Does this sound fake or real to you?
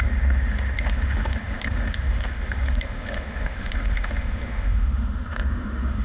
fake